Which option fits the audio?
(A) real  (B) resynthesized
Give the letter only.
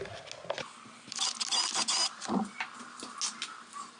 A